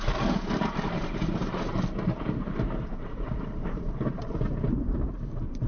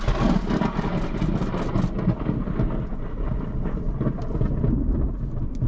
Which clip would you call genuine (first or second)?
second